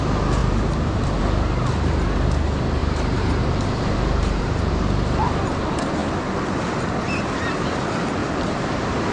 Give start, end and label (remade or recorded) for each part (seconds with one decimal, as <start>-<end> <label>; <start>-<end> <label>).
0.0-0.4 recorded; 0.4-1.2 remade; 1.2-2.8 recorded; 2.8-4.7 remade; 4.7-8.2 recorded; 8.2-9.1 remade